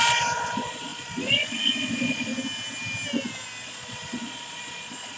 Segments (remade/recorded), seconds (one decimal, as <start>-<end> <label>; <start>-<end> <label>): 0.0-2.3 remade; 2.3-3.6 recorded; 3.6-5.2 remade